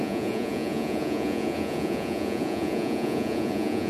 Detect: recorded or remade remade